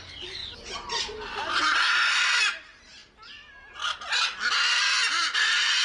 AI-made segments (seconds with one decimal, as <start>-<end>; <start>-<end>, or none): none